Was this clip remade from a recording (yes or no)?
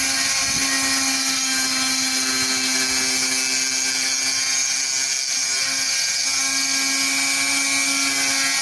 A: no